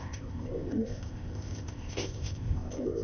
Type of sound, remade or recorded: remade